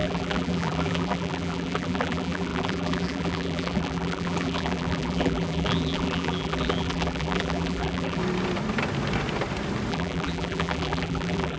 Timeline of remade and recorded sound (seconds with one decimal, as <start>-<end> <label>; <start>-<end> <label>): 0.0-8.2 remade; 8.2-9.9 recorded; 9.9-11.6 remade